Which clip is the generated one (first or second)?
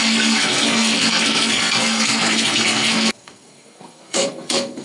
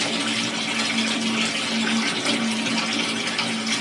first